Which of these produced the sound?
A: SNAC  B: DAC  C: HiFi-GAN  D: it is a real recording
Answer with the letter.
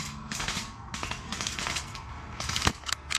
A